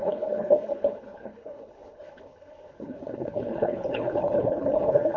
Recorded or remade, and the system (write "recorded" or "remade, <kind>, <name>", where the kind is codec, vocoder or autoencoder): remade, codec, HILCodec